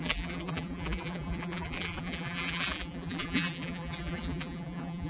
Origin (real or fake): fake